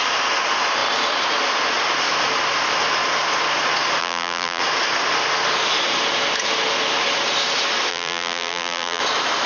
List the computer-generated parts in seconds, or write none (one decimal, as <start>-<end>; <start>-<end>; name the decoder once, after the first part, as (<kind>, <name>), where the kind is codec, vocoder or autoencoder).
4.0-4.6 (vocoder, BigVGAN v2); 7.9-9.0